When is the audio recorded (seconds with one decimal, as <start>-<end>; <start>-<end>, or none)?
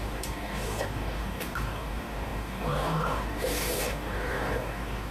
none